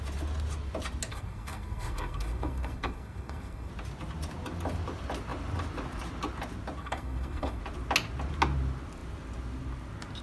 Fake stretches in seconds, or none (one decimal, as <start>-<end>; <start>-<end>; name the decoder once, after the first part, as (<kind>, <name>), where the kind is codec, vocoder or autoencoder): 1.1-3.7 (codec, SNAC); 6.8-7.6